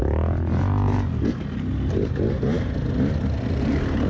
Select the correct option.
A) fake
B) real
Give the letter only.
B